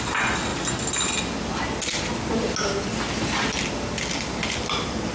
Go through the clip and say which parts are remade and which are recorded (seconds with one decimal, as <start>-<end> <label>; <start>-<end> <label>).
0.0-5.1 recorded